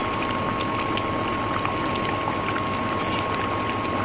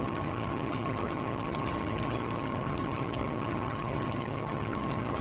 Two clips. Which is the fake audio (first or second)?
second